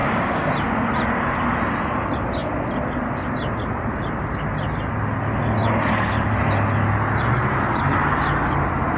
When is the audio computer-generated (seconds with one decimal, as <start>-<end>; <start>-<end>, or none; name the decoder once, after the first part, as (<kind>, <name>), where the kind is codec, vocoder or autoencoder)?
0.0-0.5 (codec, DAC)